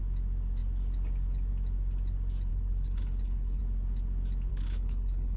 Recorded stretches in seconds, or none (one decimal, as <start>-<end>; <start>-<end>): 0.0-2.5; 3.6-4.5